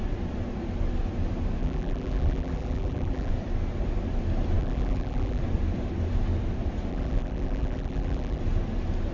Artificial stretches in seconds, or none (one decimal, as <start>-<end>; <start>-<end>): 1.6-3.3; 4.6-5.4; 6.9-8.4